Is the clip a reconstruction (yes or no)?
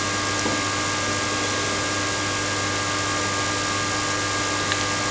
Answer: no